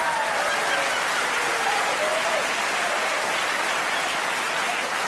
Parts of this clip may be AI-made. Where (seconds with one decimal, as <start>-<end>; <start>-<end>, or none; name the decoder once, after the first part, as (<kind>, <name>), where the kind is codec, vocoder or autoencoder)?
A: none